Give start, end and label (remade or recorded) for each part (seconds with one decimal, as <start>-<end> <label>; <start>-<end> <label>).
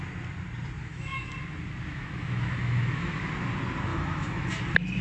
0.0-0.8 recorded; 0.8-1.3 remade; 1.3-1.9 recorded; 1.9-3.3 remade; 3.3-3.9 recorded; 3.9-4.5 remade; 4.5-5.0 recorded